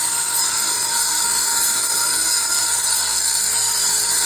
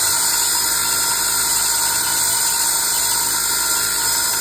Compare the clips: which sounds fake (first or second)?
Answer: first